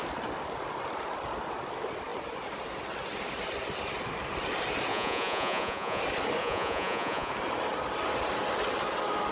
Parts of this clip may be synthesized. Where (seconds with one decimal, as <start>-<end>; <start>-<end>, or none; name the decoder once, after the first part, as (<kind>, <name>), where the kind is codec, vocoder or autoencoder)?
4.9-6.0 (vocoder, Vocos); 6.4-7.3